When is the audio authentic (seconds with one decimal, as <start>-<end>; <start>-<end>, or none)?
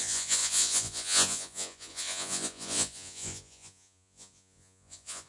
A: none